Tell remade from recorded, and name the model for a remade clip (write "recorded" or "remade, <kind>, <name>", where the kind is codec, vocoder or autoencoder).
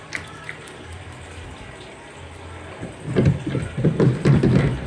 recorded